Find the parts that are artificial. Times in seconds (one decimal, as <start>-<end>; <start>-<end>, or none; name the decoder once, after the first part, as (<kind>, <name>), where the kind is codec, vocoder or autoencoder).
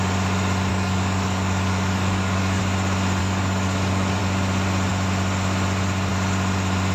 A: 0.7-2.6 (codec, DAC); 3.2-4.2